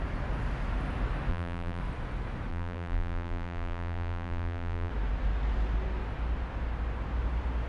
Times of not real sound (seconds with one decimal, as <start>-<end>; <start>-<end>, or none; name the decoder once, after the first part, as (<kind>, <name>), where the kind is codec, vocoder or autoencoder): 1.3-1.8 (vocoder, BigVGAN v2); 2.5-4.9